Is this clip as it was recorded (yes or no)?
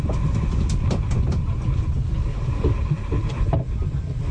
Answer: yes